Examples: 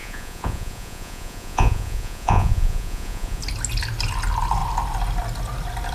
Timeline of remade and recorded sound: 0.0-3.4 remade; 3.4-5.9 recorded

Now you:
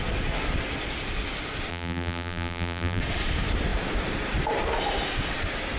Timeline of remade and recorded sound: 0.0-1.7 recorded; 1.7-3.0 remade; 3.0-5.8 recorded